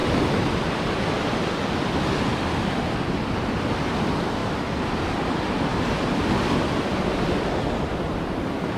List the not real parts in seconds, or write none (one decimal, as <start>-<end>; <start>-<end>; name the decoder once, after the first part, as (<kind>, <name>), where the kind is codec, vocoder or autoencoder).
none